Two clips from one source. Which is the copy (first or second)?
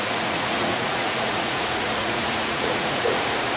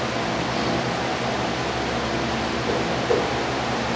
first